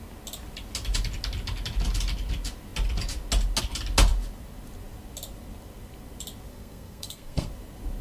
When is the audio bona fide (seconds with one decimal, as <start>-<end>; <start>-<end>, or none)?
0.0-6.5; 7.5-8.0